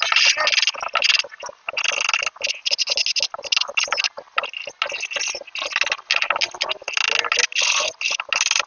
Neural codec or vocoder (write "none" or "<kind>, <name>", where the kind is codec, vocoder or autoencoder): none